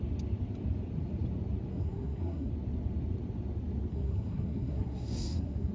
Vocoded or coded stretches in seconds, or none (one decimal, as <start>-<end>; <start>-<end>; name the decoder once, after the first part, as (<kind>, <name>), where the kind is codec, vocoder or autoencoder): 1.7-2.5 (codec, SNAC); 3.9-5.7